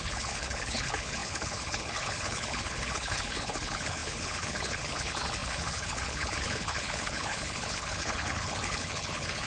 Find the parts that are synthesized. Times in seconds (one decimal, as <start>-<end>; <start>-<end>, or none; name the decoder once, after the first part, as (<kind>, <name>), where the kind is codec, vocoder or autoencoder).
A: 0.0-9.5 (codec, HILCodec)